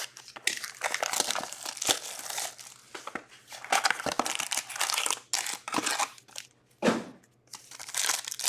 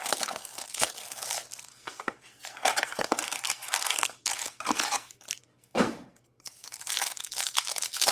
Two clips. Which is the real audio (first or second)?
first